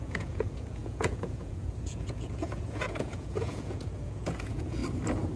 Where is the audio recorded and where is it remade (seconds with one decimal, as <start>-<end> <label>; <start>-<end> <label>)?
0.0-4.8 remade; 4.8-5.4 recorded